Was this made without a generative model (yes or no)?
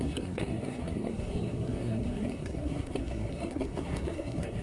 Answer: no